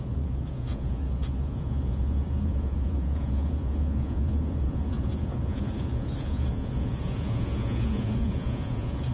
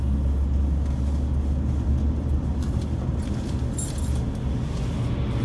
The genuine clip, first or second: second